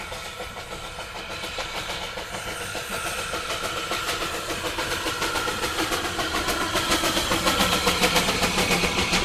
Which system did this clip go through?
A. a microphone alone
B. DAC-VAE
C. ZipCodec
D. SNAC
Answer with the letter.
A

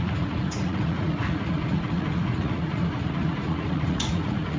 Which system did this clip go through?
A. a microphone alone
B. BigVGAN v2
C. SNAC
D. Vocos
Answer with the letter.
D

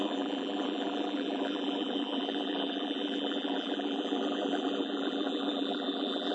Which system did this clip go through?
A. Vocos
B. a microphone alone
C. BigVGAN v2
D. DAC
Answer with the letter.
C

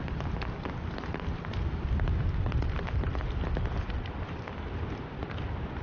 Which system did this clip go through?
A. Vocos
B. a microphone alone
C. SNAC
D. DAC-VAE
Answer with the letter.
B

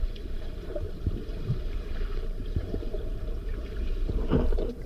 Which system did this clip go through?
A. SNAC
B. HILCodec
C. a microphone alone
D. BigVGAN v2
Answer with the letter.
D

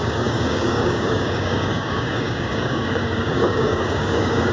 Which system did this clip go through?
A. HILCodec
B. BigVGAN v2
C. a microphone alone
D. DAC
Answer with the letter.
D